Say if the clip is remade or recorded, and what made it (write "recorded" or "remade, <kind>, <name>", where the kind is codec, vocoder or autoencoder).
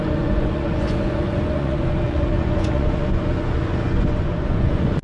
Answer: remade, vocoder, Vocos